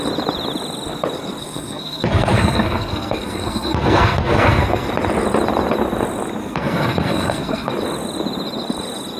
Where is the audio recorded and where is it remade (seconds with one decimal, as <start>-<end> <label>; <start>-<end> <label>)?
0.0-1.4 recorded; 1.4-4.9 remade; 4.9-6.4 recorded; 6.4-7.7 remade; 7.7-9.2 recorded